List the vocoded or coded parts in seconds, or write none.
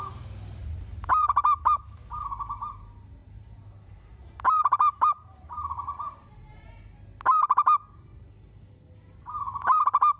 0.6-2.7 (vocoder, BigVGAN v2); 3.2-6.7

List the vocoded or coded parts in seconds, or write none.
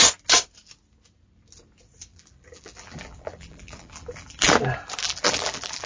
2.1-4.5 (vocoder, BigVGAN v2); 5.0-5.9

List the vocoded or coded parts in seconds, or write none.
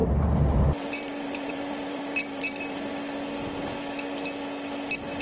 0.0-2.9 (vocoder, BigVGAN v2)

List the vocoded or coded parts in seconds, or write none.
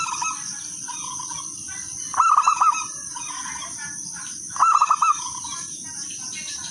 2.5-6.7 (vocoder, BigVGAN v2)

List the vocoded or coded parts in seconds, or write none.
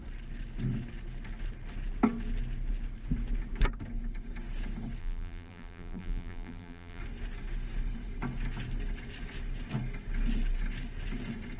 5.0-7.0 (vocoder, BigVGAN v2)